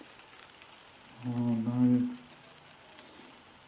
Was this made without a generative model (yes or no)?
yes